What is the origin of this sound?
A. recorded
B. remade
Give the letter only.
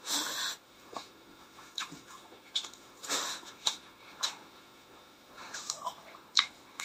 B